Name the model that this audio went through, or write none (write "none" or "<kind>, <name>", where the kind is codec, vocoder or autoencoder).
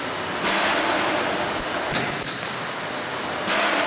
none